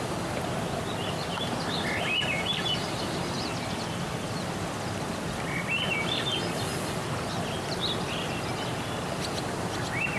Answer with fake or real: real